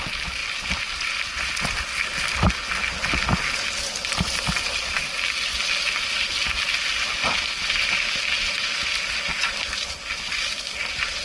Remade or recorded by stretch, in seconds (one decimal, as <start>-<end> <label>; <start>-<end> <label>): 0.0-0.4 recorded; 0.4-1.1 remade; 1.1-11.2 recorded